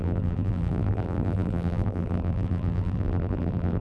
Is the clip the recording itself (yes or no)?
no